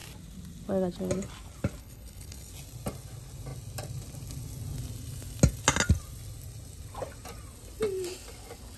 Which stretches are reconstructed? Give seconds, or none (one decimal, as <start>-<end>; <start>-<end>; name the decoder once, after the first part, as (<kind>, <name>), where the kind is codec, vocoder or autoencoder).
1.8-2.5 (codec, HILCodec)